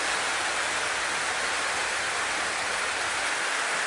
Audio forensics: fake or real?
real